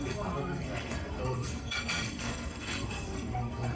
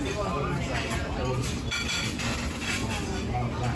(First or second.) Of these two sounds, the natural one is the second